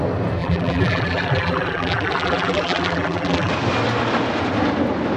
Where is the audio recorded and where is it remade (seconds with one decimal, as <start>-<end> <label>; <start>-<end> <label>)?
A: 0.0-0.4 recorded; 0.4-3.5 remade; 3.5-5.2 recorded